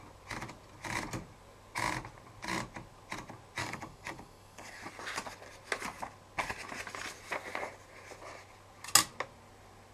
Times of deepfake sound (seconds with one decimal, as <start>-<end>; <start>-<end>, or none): 3.6-4.9